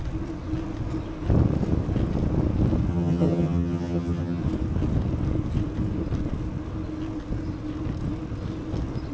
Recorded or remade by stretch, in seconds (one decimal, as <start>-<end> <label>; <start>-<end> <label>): 0.0-2.9 recorded; 2.9-4.4 remade; 4.4-9.1 recorded